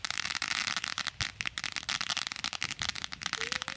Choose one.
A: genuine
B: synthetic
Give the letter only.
A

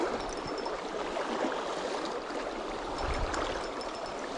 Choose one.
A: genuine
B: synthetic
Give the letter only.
A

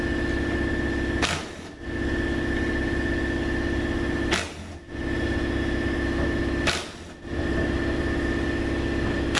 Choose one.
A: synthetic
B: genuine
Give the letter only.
B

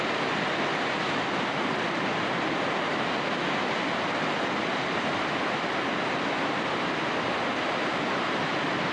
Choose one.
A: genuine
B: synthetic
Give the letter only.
A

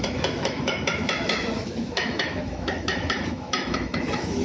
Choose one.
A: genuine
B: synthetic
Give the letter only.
B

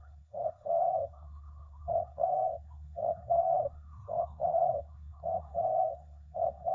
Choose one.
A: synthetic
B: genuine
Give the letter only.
A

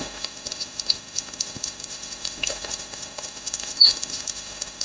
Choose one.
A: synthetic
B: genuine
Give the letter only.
A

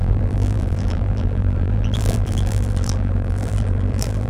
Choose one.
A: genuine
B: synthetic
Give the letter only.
B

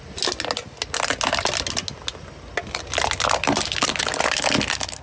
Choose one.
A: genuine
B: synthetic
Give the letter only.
A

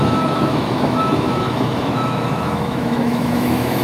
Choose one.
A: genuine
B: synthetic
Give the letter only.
B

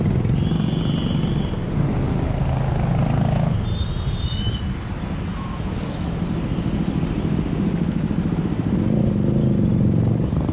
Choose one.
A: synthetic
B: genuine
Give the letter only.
B